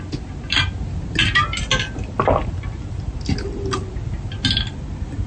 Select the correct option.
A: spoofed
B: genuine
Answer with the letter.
B